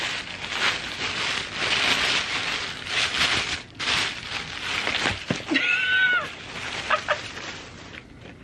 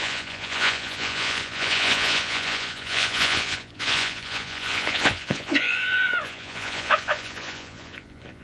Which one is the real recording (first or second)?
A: first